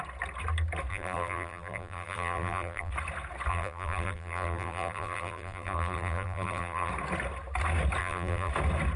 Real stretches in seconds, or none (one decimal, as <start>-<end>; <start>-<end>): 0.0-0.9; 2.9-3.5; 6.9-8.0; 8.5-9.0